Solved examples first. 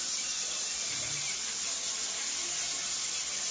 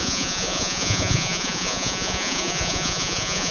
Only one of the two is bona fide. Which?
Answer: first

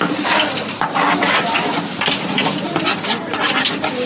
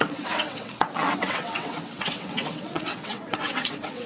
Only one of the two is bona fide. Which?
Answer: first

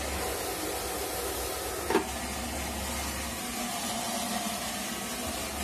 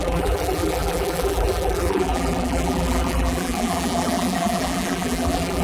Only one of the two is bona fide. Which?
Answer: first